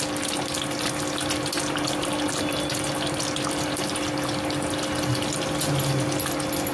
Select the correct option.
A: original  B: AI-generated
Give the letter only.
A